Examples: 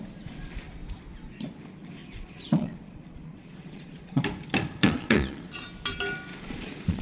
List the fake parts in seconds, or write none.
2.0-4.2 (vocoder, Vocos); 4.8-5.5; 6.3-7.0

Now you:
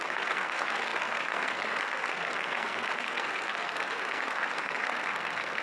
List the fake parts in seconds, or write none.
0.0-5.6 (codec, SNAC)

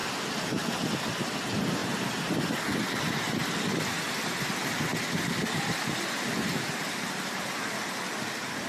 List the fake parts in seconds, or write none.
none

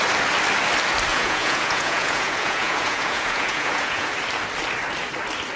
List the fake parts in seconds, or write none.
1.1-4.1 (vocoder, Vocos)